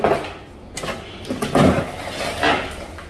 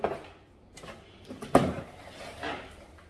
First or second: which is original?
first